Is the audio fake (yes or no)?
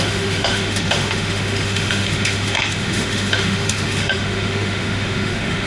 yes